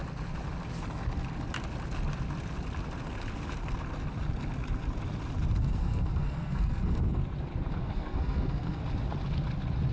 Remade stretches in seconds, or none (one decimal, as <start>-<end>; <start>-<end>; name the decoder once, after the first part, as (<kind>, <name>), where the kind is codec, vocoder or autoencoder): 5.6-7.2 (codec, SNAC); 7.8-8.8